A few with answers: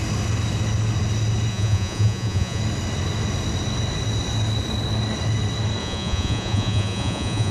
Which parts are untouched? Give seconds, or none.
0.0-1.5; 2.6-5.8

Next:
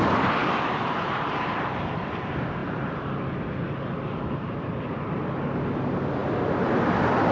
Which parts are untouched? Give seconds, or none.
0.0-7.3

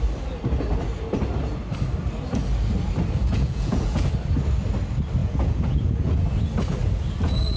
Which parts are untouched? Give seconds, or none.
0.0-3.2; 4.1-5.2; 6.2-7.6